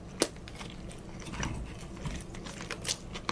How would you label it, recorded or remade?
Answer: recorded